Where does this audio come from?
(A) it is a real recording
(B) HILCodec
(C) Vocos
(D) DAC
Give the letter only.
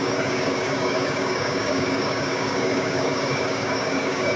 D